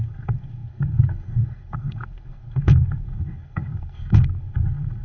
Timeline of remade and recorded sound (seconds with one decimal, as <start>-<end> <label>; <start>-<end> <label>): 0.0-5.0 remade